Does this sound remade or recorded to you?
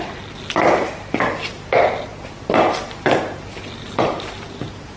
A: recorded